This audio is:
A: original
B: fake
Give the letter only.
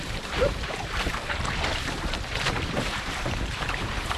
B